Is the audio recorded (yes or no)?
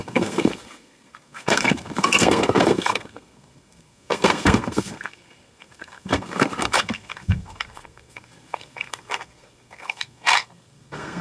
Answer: no